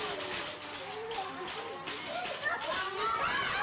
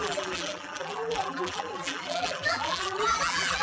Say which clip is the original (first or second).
first